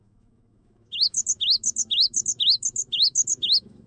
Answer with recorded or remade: remade